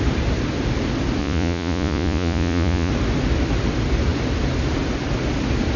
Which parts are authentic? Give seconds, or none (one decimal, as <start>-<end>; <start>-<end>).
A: 0.0-1.2; 2.9-5.8